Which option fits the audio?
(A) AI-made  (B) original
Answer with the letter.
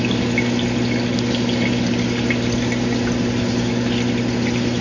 B